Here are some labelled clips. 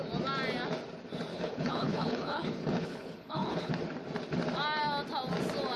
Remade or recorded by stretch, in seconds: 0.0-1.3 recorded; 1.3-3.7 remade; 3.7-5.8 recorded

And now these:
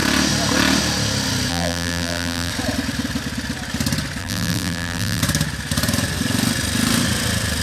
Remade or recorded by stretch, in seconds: 0.0-1.5 recorded; 1.5-2.5 remade; 2.5-4.2 recorded; 4.2-5.2 remade; 5.2-7.6 recorded

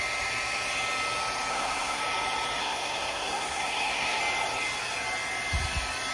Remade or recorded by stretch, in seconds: 0.0-1.5 recorded; 1.5-2.0 remade; 2.0-2.6 recorded; 2.6-4.2 remade; 4.2-6.1 recorded

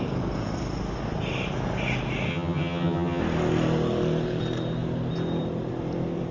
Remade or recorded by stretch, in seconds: 0.0-2.3 recorded; 2.3-3.2 remade; 3.2-6.3 recorded

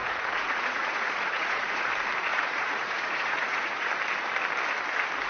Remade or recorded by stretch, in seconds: 0.0-1.9 remade; 1.9-2.3 recorded; 2.3-3.9 remade; 3.9-5.3 recorded

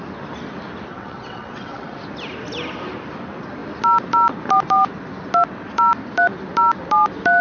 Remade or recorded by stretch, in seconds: 0.0-0.9 recorded; 0.9-2.0 remade; 2.0-7.4 recorded

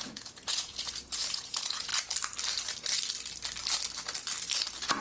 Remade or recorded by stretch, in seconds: 0.0-1.9 remade; 1.9-5.0 recorded

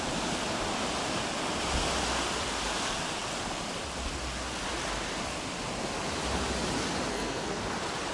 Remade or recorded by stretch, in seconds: 0.0-7.1 recorded; 7.1-7.6 remade; 7.6-8.1 recorded